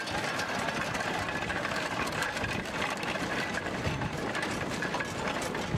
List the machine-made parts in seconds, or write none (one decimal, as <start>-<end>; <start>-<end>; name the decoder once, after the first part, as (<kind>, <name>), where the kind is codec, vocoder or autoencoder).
1.5-5.0 (vocoder, BigVGAN v2)